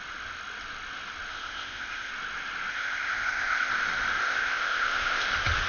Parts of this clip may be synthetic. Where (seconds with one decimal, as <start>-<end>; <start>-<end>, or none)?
1.3-2.1; 2.7-3.7; 4.2-5.3